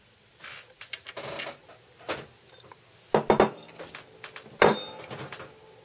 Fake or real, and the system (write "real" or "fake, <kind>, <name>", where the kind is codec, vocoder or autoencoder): real